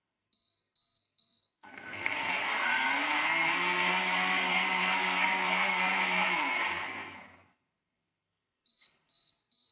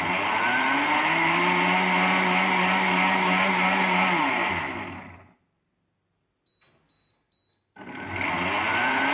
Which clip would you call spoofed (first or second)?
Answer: first